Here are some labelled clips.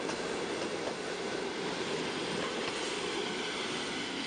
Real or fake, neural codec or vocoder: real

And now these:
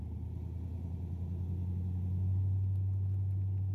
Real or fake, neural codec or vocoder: real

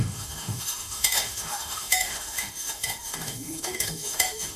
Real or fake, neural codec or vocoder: fake, autoencoder, DAC-VAE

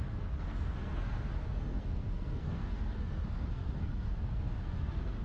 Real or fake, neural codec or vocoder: fake, codec, SNAC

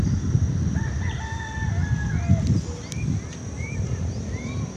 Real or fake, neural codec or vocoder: real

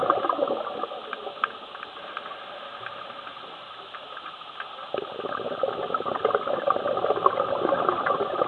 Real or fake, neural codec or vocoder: real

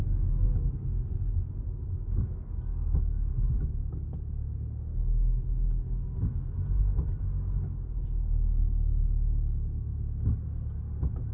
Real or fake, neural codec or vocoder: real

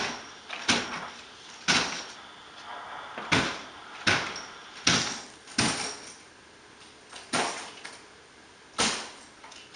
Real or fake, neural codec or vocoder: real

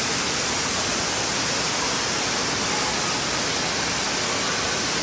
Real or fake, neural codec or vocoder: real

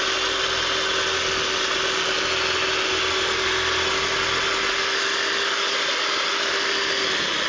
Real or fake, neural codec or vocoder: real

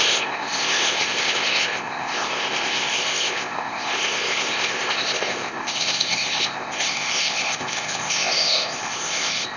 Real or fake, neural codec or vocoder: fake, codec, ZipCodec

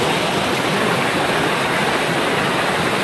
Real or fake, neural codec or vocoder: real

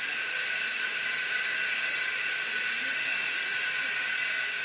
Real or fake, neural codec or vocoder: real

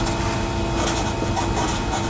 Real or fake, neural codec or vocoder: real